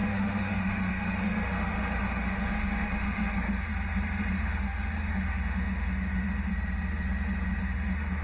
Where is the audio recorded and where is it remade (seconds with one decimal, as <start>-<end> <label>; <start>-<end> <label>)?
0.0-3.7 remade; 3.7-4.3 recorded; 4.3-6.5 remade; 6.5-7.6 recorded; 7.6-8.2 remade